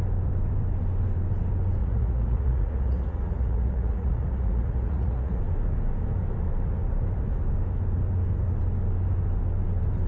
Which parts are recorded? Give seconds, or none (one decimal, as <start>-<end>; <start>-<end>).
0.0-1.8; 5.4-10.1